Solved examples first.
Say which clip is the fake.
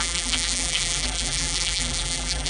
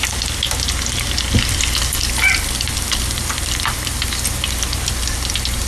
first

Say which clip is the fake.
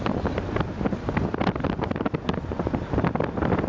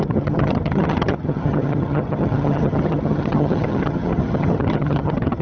second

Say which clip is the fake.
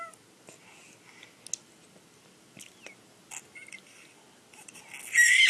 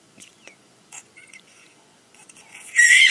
second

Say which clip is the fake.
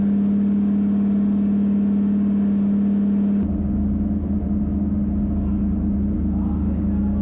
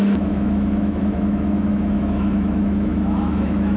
second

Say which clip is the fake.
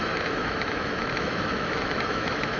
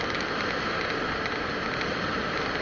first